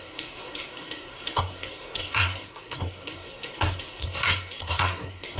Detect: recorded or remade remade